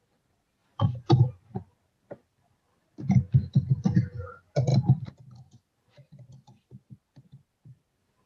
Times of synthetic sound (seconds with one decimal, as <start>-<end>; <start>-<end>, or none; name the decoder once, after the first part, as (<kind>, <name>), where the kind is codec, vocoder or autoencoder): 0.6-1.2 (vocoder, BigVGAN v2)